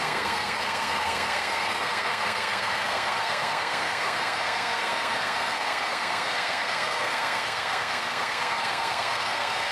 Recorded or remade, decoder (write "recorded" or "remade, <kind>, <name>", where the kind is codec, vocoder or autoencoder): remade, codec, SNAC